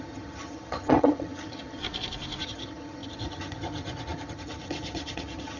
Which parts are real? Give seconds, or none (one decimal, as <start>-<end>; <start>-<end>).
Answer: 1.8-2.4